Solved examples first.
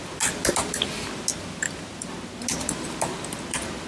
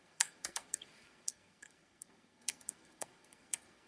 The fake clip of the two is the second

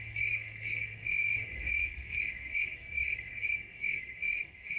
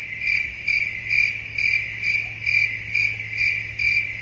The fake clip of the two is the first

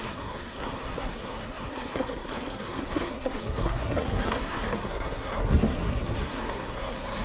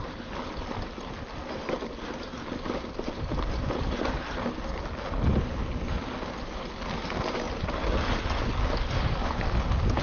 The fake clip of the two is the first